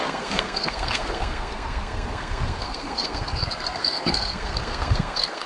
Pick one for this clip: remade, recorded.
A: remade